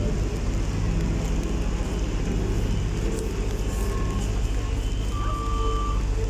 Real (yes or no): yes